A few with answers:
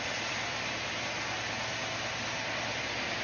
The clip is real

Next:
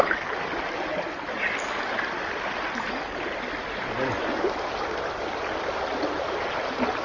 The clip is real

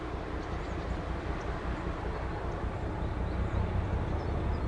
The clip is real